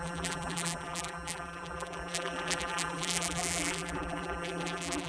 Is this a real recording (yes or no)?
no